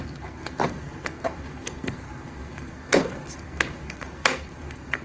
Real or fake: fake